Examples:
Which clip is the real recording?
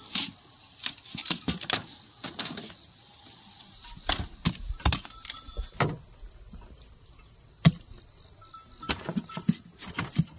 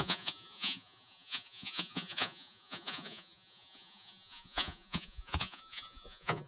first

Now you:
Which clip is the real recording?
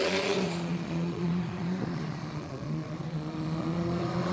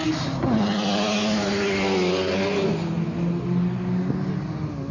second